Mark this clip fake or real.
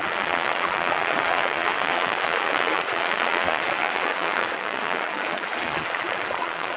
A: fake